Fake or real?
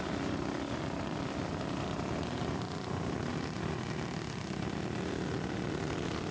real